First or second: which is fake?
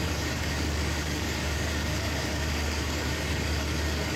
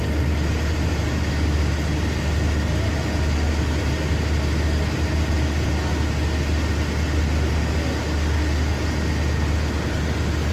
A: first